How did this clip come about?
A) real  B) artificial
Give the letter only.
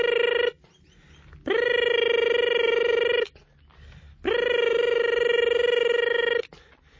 A